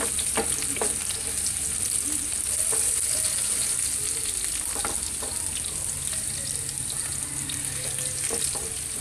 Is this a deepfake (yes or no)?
no